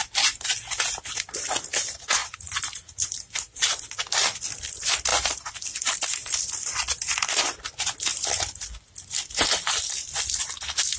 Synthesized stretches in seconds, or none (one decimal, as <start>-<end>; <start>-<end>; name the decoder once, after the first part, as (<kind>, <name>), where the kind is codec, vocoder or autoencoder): none